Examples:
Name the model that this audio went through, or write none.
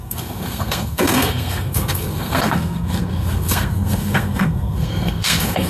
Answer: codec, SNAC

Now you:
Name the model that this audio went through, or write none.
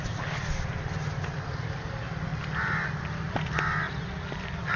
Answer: none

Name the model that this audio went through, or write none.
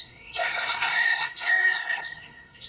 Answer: codec, SNAC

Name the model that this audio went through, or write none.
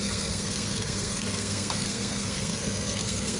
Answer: codec, SNAC